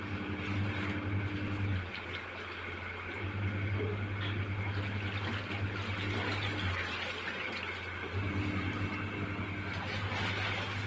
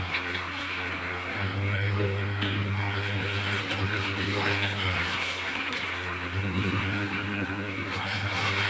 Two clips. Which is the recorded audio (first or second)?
first